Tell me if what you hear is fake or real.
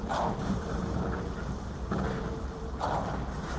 fake